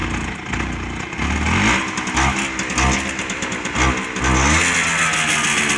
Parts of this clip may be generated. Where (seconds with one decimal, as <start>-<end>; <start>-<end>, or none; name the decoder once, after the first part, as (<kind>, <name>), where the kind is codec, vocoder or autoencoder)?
none